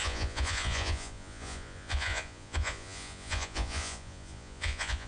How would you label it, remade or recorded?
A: remade